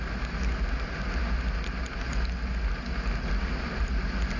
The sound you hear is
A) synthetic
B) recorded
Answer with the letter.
B